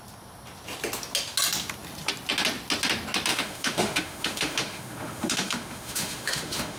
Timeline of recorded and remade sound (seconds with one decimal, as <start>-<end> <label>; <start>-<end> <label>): 0.0-3.3 recorded; 3.3-6.8 remade